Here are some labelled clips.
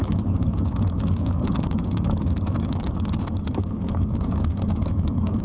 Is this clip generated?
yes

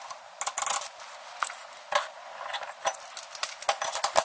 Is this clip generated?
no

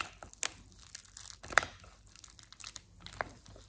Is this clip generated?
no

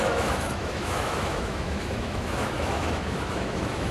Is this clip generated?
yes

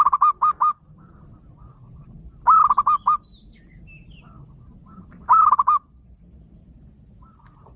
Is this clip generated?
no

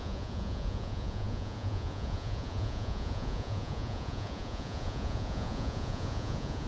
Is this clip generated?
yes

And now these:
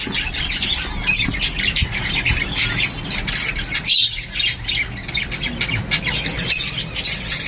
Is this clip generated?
no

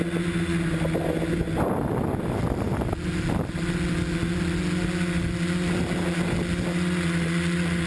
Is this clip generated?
no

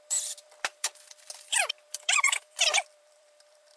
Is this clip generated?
yes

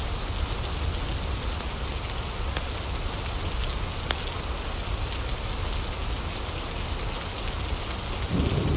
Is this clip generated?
no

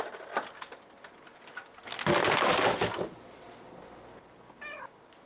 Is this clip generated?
no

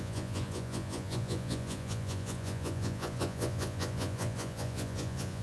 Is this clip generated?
yes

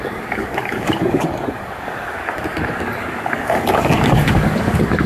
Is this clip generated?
yes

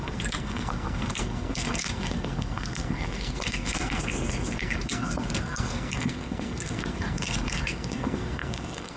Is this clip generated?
yes